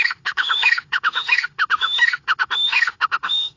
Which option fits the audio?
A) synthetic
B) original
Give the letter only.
A